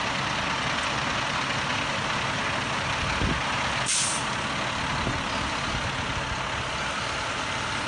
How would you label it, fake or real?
real